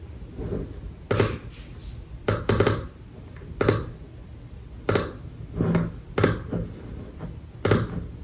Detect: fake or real real